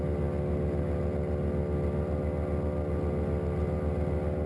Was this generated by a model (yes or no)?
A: no